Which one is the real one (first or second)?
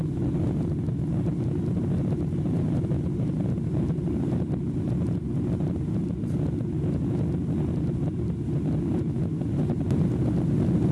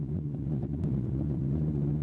first